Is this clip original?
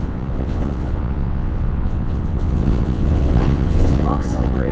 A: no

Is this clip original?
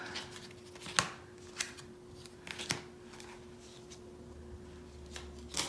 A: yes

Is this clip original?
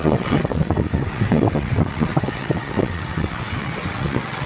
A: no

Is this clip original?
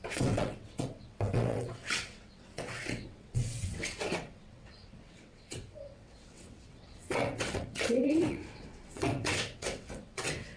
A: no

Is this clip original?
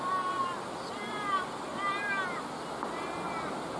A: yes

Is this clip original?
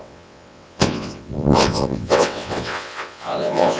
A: no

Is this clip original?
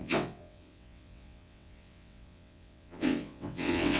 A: no